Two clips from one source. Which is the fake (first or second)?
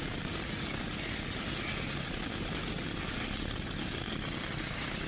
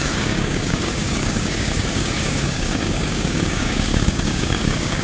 second